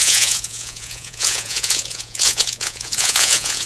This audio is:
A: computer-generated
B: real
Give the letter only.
A